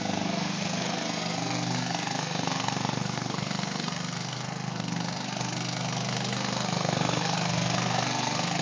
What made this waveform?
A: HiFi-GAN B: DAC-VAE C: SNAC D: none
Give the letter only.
C